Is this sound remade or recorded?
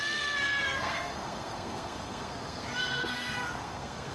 remade